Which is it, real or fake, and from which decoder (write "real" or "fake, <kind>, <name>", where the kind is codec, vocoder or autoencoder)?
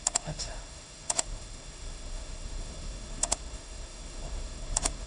fake, autoencoder, DAC-VAE